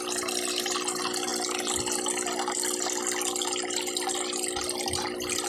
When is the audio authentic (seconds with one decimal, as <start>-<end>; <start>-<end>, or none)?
0.0-5.5

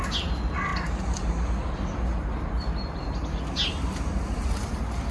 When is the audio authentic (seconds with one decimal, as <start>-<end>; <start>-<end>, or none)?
0.0-5.1

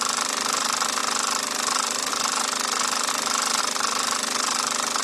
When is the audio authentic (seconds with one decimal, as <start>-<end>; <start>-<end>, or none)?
0.0-5.0

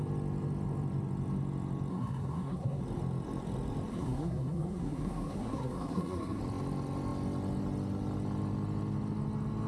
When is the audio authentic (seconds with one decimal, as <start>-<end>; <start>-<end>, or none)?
0.0-1.9; 2.8-3.9; 6.4-9.7

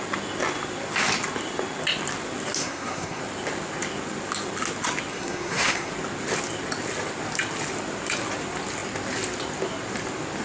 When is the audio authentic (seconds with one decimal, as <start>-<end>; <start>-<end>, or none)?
0.0-2.6; 3.2-5.1; 5.9-10.4